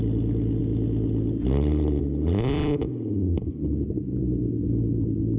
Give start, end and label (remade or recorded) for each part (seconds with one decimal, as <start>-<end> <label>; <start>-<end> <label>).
0.0-5.4 recorded